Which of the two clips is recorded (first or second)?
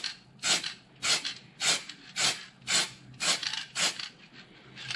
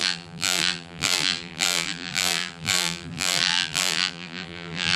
first